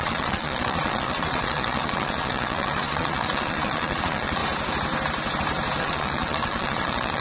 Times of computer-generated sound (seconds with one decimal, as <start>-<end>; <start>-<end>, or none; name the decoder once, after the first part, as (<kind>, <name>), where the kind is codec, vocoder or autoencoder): 0.0-4.4 (vocoder, Vocos); 5.8-7.2